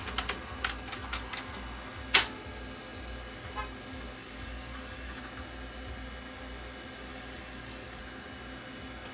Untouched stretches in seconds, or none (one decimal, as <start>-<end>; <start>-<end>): 0.0-4.2; 5.2-7.1; 8.0-9.1

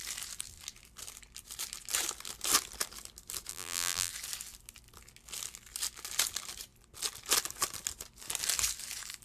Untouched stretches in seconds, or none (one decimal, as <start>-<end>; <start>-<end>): 0.0-3.5; 4.1-9.2

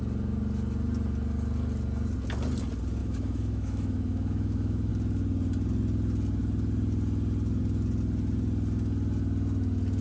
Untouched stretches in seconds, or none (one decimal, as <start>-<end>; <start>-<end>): 0.0-3.0; 4.9-10.0

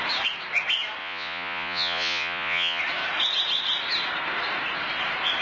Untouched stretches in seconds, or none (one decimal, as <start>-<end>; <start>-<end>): 0.0-1.0; 2.8-5.4

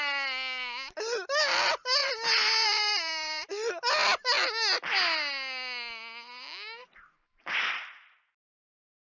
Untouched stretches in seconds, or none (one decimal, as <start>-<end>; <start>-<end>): 0.0-2.0; 3.5-6.8; 7.5-9.1